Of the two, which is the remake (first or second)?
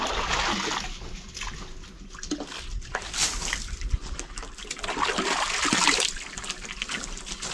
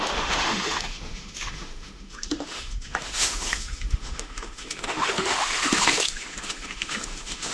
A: second